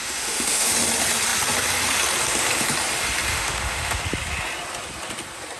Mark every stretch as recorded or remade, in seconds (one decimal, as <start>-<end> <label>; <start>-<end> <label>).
0.0-0.7 remade; 0.7-3.3 recorded; 3.3-4.0 remade; 4.0-5.6 recorded